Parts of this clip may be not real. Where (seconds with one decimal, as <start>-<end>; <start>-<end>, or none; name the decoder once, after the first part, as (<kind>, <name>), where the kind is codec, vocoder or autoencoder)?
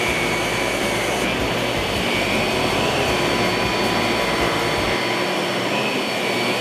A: none